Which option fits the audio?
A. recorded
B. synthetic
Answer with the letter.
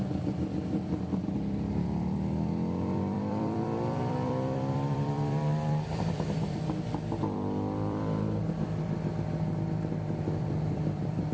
B